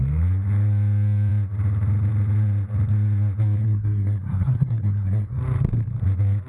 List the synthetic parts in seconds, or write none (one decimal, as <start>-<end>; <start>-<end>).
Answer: 3.6-5.4